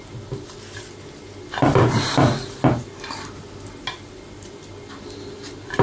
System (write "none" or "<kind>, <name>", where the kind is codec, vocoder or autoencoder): none